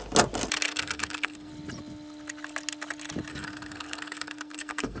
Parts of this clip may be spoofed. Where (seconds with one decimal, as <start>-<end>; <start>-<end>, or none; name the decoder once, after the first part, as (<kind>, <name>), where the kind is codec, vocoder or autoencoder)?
0.7-1.5 (codec, SNAC); 3.3-5.0